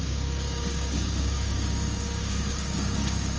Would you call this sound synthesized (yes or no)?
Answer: yes